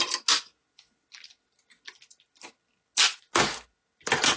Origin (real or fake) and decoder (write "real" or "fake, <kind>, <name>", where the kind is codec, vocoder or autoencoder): real